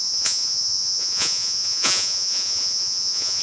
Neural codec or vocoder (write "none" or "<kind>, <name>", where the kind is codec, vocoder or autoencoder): vocoder, Vocos